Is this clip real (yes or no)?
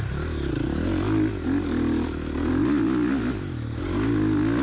yes